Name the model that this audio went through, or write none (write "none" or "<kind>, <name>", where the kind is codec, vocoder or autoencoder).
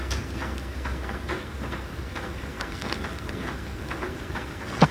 codec, SNAC